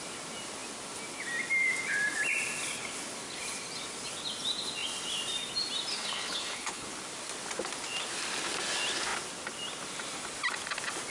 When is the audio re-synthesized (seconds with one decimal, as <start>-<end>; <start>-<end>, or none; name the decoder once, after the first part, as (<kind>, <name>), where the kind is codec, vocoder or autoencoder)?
5.9-6.9 (codec, HILCodec)